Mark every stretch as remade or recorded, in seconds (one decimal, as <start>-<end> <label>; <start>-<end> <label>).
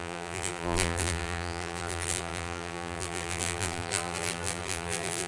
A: 0.0-5.3 remade